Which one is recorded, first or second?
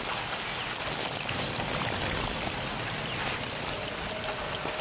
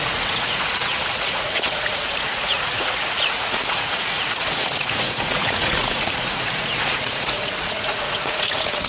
first